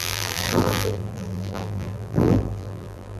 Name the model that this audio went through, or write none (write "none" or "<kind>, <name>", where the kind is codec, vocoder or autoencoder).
vocoder, BigVGAN v2